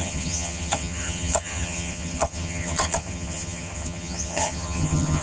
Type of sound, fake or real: fake